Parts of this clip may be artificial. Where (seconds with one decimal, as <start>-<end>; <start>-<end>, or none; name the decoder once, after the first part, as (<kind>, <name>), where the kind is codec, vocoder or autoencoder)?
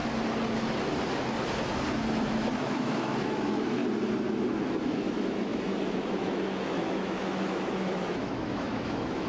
1.9-3.8 (autoencoder, DAC-VAE); 4.8-9.3